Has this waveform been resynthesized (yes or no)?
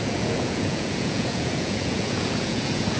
yes